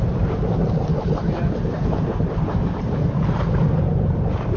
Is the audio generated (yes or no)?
yes